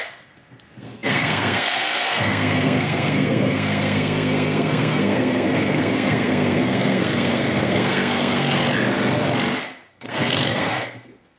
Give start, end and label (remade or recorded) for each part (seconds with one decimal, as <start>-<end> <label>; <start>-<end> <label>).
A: 0.0-8.6 remade; 8.6-9.9 recorded; 9.9-11.4 remade